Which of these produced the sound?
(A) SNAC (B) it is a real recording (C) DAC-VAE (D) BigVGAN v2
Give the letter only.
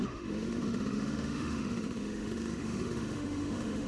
C